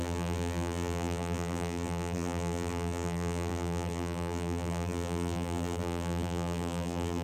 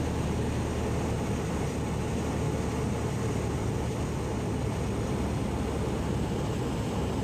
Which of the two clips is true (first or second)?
second